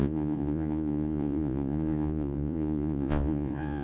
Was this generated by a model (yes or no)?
yes